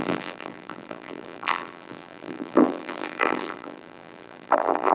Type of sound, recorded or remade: remade